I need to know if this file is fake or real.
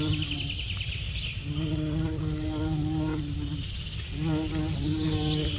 real